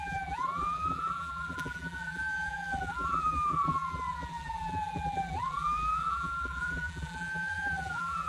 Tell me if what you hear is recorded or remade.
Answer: remade